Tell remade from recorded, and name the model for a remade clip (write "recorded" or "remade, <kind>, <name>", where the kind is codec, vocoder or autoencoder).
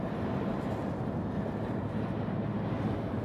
recorded